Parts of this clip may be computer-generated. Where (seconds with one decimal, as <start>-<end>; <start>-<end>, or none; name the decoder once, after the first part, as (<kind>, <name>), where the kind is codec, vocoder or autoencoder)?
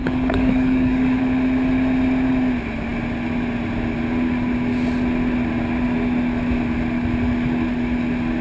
0.0-1.2 (codec, DAC)